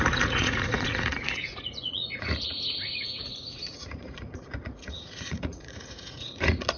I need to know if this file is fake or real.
fake